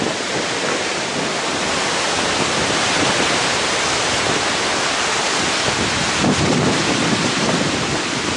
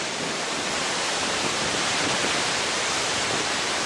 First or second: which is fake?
second